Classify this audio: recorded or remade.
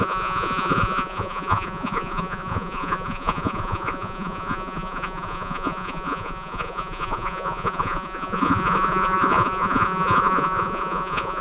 remade